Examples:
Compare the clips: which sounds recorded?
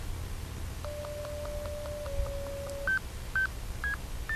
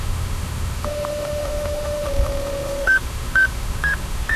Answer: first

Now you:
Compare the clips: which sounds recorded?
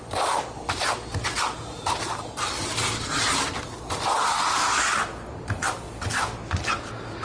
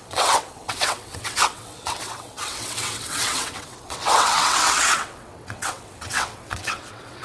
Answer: first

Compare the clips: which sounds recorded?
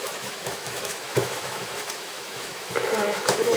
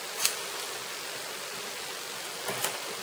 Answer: second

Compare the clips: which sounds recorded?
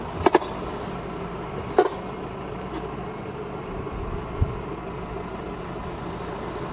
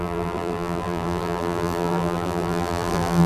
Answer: first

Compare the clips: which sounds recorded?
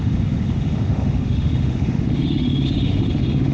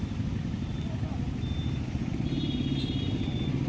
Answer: second